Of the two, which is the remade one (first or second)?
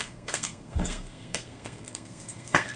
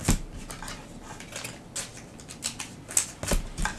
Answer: first